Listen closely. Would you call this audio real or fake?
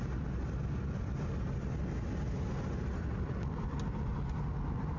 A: real